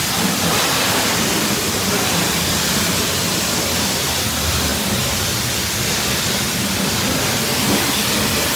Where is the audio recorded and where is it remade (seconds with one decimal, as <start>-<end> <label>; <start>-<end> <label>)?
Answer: 0.0-8.6 recorded